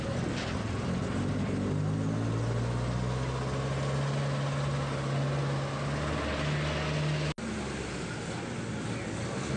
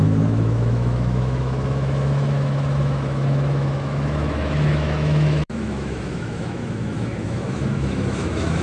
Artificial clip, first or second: second